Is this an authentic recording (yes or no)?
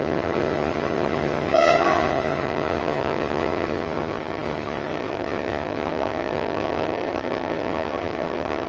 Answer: no